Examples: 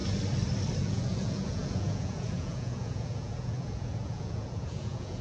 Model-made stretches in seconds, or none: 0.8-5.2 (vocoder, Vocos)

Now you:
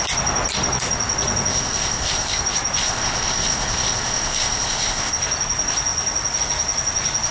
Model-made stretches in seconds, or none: 1.5-2.4 (codec, ZipCodec); 2.8-5.1